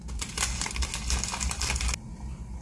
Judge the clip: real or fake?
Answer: real